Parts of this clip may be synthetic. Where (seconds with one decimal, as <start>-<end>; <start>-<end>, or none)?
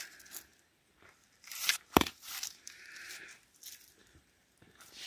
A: 0.5-3.6; 4.0-5.1